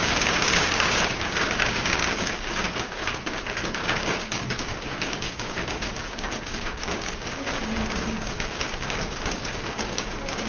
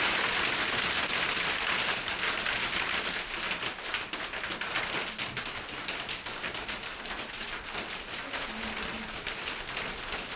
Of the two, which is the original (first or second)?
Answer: second